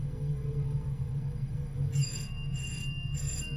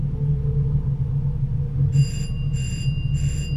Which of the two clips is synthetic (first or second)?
first